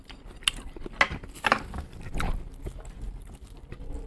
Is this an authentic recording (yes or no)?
yes